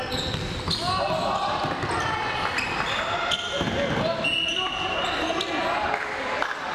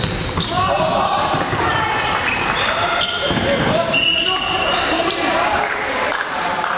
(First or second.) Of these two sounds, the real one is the first